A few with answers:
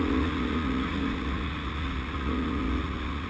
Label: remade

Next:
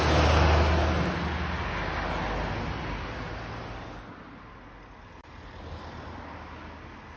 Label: recorded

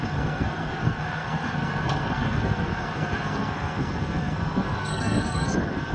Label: remade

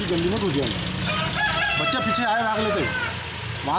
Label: recorded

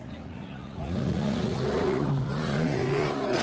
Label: remade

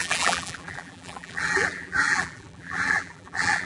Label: remade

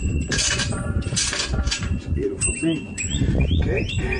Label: remade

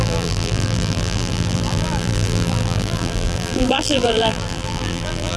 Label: remade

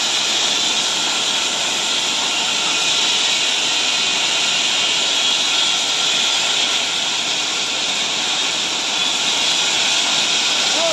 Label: recorded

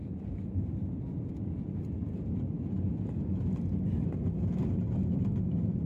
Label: recorded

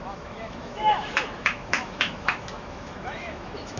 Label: remade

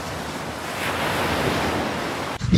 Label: recorded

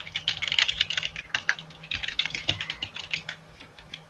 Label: remade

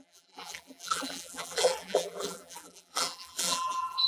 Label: remade